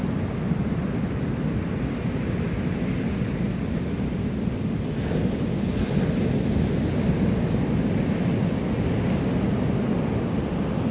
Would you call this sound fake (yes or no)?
no